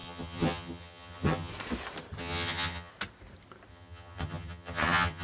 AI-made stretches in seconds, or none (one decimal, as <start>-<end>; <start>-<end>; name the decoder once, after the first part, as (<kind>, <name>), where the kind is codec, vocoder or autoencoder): 0.0-1.5 (vocoder, HiFi-GAN); 2.2-2.9; 3.7-5.2